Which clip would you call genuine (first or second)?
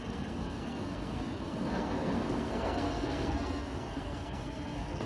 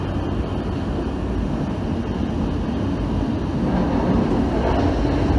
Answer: second